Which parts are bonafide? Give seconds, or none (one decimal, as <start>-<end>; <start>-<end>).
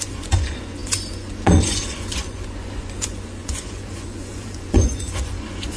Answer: none